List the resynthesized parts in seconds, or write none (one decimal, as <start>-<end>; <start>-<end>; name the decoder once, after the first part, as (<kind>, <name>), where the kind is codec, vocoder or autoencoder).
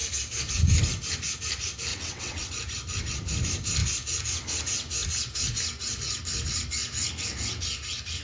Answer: 1.9-2.5 (vocoder, WaveNeXt)